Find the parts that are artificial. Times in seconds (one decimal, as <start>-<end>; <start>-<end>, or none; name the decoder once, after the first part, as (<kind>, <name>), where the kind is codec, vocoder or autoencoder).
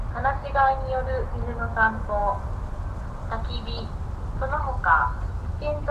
none